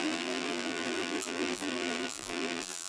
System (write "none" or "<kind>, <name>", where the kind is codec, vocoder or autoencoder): vocoder, BigVGAN v2